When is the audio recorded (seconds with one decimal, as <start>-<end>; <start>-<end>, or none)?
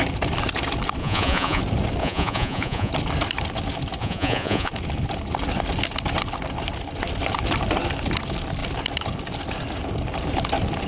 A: 0.0-1.0; 1.6-2.0; 2.9-4.0; 4.7-10.9